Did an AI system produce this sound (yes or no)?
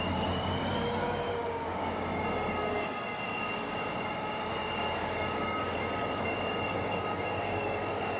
yes